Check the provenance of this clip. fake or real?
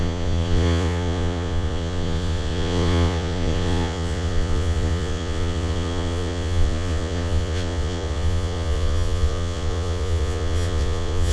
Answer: fake